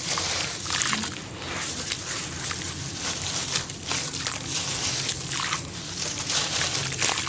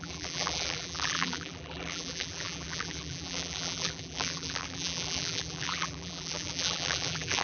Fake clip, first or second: second